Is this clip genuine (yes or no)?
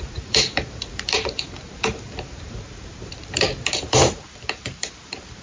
no